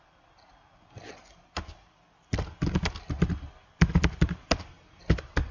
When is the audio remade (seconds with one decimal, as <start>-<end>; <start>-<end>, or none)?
none